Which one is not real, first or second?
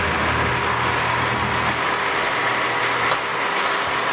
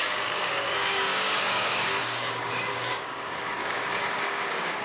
second